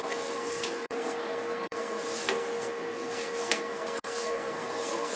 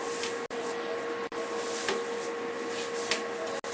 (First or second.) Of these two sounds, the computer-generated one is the first